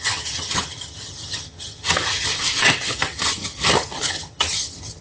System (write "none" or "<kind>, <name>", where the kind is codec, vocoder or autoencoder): vocoder, HiFi-GAN